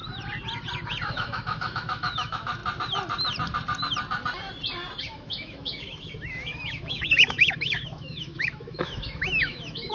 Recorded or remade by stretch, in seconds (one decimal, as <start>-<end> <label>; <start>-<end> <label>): 0.0-1.1 recorded; 1.1-2.6 remade; 2.6-5.0 recorded; 5.0-9.9 remade